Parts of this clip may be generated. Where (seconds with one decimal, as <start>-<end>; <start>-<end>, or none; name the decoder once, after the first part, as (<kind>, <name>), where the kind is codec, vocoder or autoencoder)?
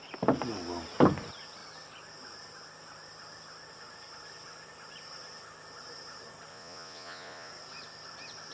6.5-7.5 (vocoder, Vocos)